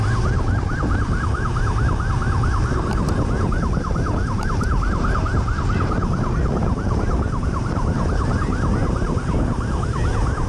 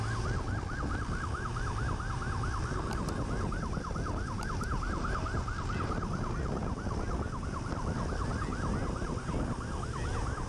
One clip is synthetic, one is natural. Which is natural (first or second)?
second